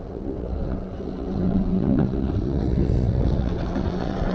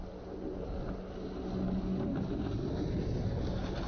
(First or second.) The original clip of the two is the second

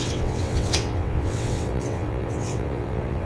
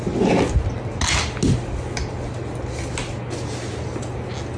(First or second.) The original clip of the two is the second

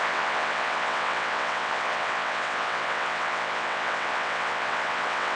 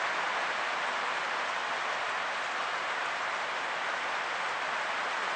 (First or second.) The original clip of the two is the second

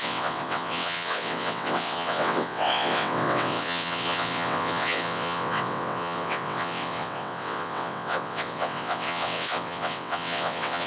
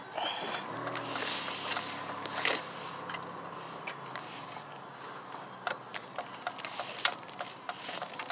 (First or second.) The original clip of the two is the second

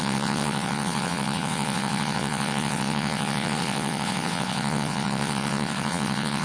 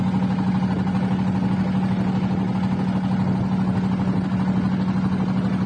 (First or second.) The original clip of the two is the second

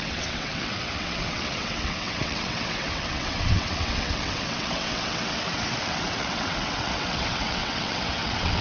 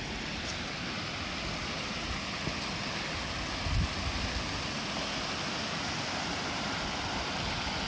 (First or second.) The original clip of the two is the second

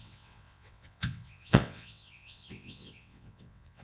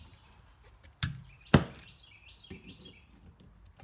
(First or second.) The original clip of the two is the second